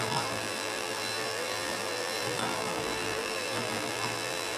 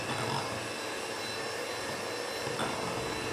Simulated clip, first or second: first